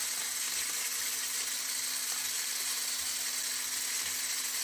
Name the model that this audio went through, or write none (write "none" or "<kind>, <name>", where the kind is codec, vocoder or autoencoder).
none